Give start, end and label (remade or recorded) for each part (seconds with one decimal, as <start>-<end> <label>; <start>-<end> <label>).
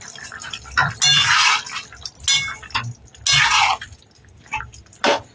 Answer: 0.0-5.3 recorded